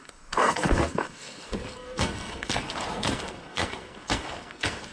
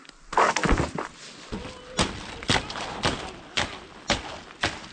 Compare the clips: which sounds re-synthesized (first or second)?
first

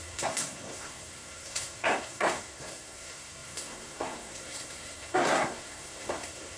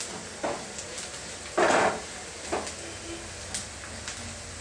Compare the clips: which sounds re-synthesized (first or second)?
first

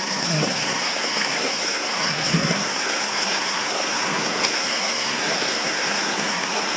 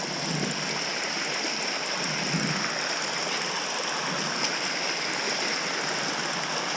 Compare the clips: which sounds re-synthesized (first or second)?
first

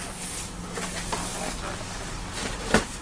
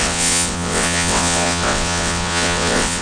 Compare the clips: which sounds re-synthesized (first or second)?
second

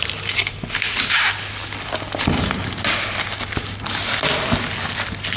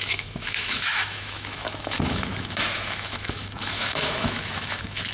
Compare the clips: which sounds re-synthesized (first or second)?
second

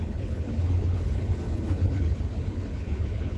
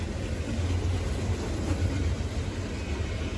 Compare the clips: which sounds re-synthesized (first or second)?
first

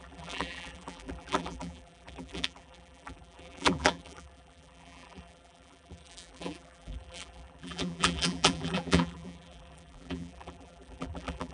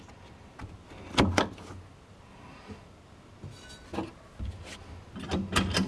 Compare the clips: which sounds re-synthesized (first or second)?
first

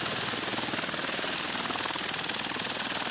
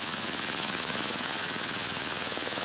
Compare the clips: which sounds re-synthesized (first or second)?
second